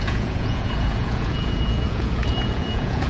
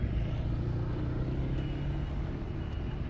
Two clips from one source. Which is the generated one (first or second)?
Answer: first